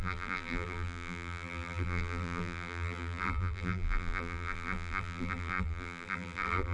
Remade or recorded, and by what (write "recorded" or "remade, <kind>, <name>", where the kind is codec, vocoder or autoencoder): remade, vocoder, BigVGAN v2